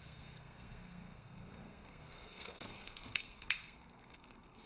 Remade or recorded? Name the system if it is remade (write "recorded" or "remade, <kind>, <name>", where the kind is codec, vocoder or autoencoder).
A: remade, codec, SNAC